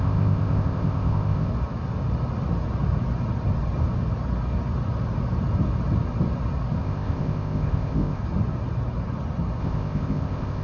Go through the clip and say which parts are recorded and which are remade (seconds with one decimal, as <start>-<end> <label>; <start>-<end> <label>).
0.0-1.5 remade; 1.5-6.8 recorded; 6.8-8.2 remade; 8.2-9.6 recorded; 9.6-10.6 remade